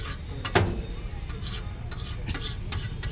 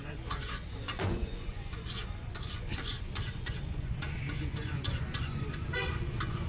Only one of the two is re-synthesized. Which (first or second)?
second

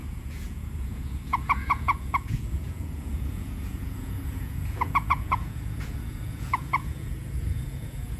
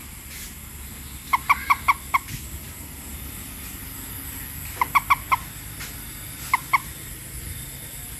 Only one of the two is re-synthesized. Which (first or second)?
first